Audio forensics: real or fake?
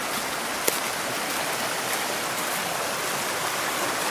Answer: real